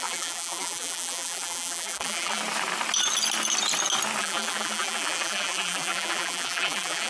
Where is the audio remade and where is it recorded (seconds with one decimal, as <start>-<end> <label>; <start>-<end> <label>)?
0.0-2.4 remade; 2.4-4.2 recorded; 4.2-7.1 remade